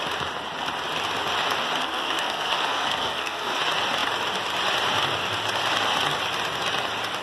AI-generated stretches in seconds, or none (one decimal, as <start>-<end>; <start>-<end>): 1.8-3.6